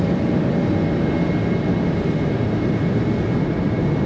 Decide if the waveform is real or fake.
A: real